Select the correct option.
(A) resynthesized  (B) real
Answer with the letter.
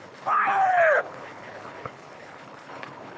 A